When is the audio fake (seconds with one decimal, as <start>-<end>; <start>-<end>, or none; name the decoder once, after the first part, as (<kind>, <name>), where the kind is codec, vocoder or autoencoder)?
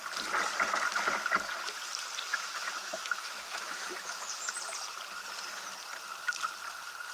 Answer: 2.3-4.5 (autoencoder, DAC-VAE)